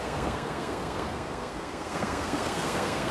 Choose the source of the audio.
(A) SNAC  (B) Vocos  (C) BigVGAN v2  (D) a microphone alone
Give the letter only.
A